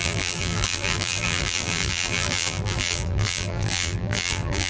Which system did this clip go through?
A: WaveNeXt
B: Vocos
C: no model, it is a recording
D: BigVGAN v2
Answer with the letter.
D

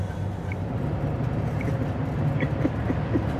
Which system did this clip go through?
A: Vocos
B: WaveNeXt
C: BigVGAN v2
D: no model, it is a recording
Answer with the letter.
D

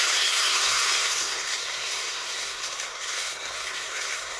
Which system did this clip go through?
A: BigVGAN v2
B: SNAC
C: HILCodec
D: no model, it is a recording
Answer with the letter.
B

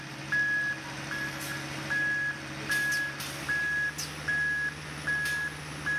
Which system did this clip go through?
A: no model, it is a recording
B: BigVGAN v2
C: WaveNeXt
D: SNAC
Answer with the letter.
A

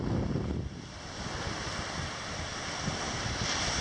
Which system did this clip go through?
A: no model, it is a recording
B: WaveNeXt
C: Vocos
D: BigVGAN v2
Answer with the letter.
A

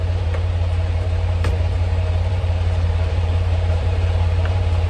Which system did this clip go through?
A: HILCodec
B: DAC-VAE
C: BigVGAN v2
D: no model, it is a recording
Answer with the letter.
C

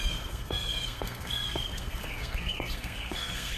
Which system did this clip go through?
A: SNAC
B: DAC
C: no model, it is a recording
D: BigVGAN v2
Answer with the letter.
A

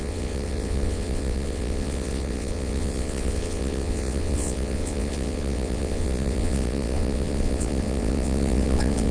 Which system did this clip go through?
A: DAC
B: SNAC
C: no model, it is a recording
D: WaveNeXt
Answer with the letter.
D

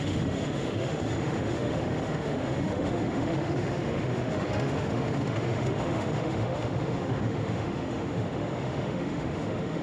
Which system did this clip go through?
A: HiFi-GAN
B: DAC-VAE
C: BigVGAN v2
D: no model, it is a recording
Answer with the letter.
B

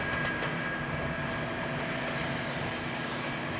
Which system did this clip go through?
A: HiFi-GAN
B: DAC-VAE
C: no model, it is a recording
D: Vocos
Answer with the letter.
C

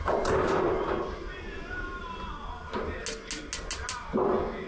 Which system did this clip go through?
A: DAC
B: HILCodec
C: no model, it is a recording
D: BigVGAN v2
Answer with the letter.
C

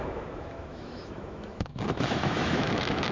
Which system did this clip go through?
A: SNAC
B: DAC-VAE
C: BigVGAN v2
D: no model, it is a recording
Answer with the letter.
B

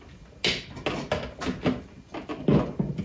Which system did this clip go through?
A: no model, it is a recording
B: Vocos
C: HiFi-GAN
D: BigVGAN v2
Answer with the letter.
A